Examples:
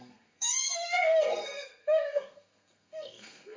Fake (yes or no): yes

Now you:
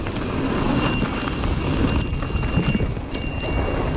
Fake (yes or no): no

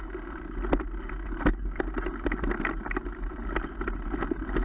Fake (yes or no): no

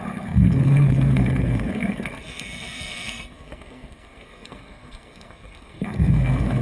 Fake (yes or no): yes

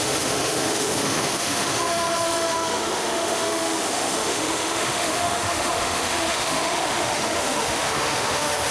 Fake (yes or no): yes